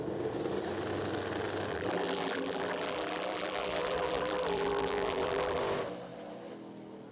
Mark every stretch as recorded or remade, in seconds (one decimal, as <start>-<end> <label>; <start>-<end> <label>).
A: 0.0-1.7 recorded; 1.7-5.6 remade; 5.6-7.1 recorded